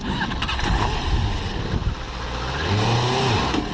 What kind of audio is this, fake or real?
real